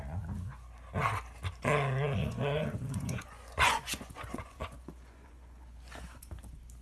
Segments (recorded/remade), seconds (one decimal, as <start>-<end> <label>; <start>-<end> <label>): 0.0-2.2 recorded; 2.2-6.3 remade; 6.3-6.8 recorded